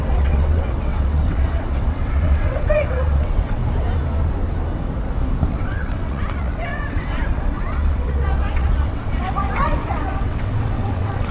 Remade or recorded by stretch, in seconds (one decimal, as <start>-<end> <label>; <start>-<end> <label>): 0.0-3.6 remade; 3.6-5.5 recorded; 5.5-11.3 remade

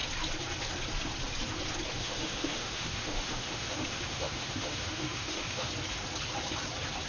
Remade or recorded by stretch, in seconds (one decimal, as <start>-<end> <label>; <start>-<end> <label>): 0.0-1.9 recorded; 1.9-5.7 remade; 5.7-7.1 recorded

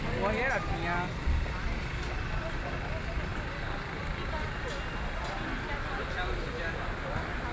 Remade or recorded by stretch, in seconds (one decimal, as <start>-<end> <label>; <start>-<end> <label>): 0.0-7.5 recorded

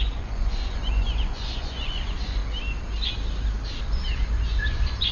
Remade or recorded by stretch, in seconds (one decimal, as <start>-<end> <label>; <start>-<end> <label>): 0.0-2.4 remade; 2.4-3.8 recorded; 3.8-5.1 remade

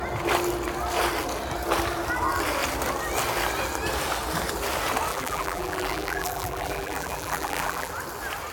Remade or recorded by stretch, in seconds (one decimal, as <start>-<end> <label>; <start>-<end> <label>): 0.0-5.1 recorded; 5.1-7.9 remade; 7.9-8.5 recorded

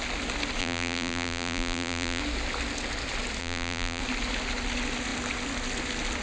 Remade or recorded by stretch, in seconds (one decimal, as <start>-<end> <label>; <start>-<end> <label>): 0.0-0.6 recorded; 0.6-2.2 remade; 2.2-3.4 recorded; 3.4-4.0 remade; 4.0-6.2 recorded

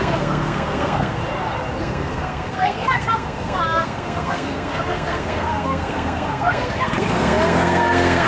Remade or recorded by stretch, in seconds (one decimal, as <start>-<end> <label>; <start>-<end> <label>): 0.0-1.2 remade; 1.2-1.8 recorded; 1.8-8.3 remade